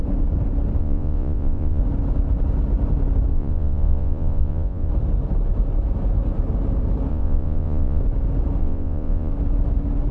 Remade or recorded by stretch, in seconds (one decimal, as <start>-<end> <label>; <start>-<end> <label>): 0.0-0.8 recorded; 0.8-1.8 remade; 1.8-3.3 recorded; 3.3-4.9 remade; 4.9-7.1 recorded; 7.1-8.0 remade; 8.0-8.6 recorded; 8.6-9.3 remade; 9.3-10.1 recorded